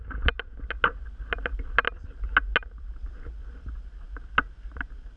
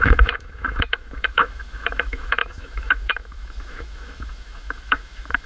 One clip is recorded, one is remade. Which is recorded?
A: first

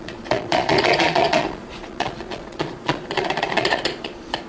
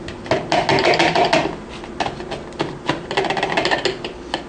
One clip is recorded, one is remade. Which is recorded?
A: second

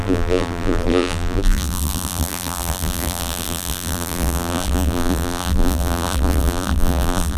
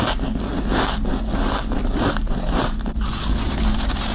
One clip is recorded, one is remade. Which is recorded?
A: second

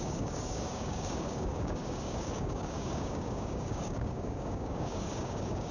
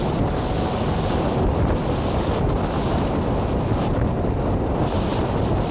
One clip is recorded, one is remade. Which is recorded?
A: second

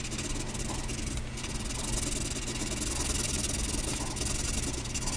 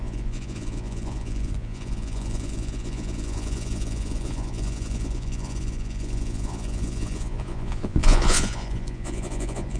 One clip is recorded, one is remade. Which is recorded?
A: first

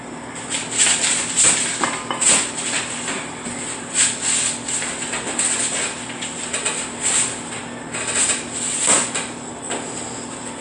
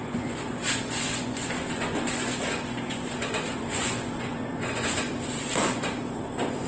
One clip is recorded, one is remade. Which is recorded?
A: first